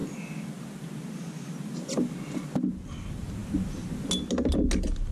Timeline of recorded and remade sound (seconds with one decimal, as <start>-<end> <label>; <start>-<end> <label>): 0.0-5.1 recorded

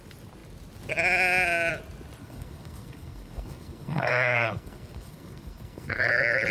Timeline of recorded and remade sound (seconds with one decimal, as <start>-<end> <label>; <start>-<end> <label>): 0.0-2.2 recorded; 2.2-6.1 remade; 6.1-6.5 recorded

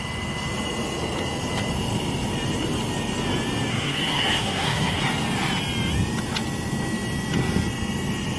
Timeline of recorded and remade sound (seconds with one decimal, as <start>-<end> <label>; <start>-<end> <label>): 0.0-3.7 recorded; 3.7-5.0 remade; 5.0-8.4 recorded

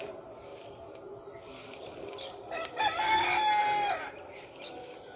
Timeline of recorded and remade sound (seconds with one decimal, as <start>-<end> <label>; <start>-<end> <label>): 0.0-5.2 recorded